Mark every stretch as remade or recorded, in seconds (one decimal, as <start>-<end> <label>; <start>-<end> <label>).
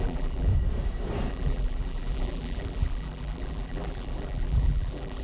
0.0-0.5 remade; 0.5-1.3 recorded; 1.3-5.2 remade